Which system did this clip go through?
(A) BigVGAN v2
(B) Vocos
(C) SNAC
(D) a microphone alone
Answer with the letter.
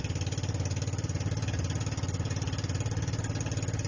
D